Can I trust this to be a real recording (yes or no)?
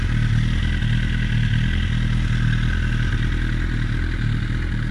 yes